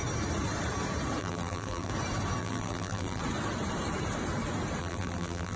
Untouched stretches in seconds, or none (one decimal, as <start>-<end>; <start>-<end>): 0.0-1.2; 1.9-2.4; 3.2-4.8